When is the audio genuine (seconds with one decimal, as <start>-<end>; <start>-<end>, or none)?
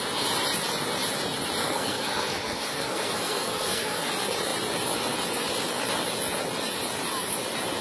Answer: 0.0-1.6; 4.1-7.8